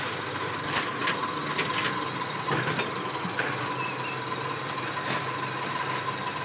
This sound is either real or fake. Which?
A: real